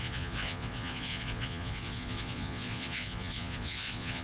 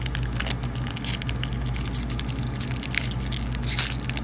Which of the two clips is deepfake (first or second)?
first